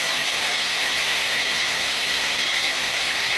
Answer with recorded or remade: remade